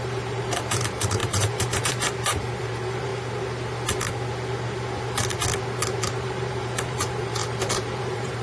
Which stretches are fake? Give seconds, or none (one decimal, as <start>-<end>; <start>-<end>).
0.0-3.1; 6.0-8.4